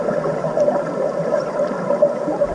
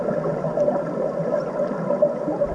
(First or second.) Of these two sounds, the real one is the second